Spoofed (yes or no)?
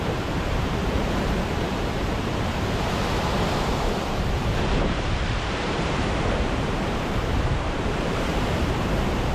yes